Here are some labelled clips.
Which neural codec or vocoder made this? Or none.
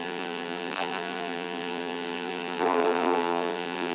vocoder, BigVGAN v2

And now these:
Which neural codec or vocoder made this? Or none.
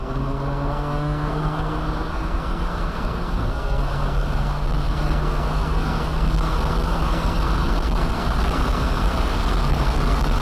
codec, SNAC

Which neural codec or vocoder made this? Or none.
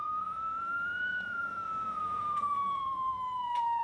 vocoder, Vocos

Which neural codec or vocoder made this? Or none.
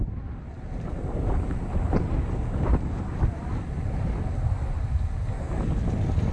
none